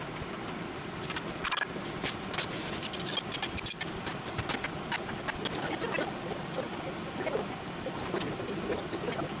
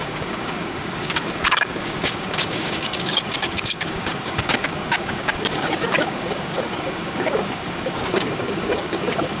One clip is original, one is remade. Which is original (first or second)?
first